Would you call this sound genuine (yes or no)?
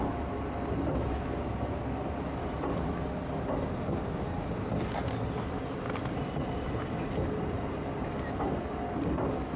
yes